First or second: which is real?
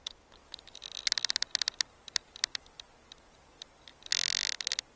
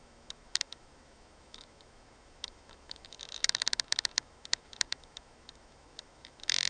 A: first